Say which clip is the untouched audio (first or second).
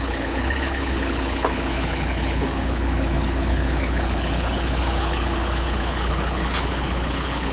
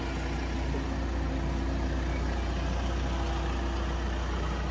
second